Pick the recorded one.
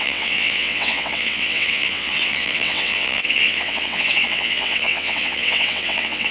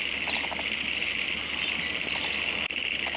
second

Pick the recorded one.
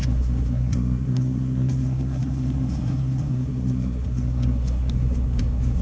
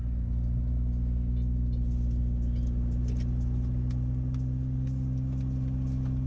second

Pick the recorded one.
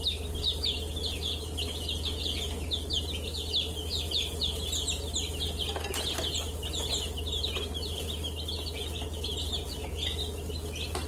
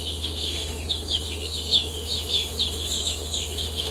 first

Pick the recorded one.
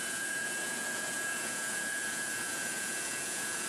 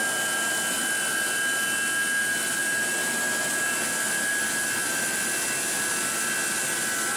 second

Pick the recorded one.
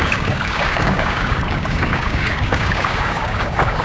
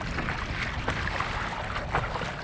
second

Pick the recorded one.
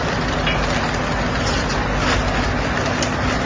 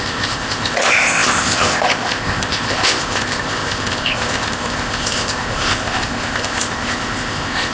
first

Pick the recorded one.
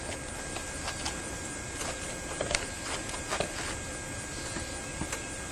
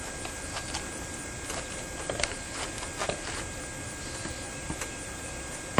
first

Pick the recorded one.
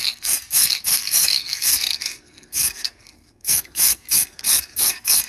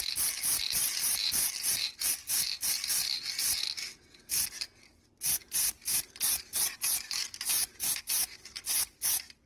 second